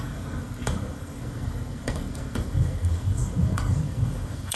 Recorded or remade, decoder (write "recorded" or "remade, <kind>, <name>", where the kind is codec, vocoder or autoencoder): remade, codec, SNAC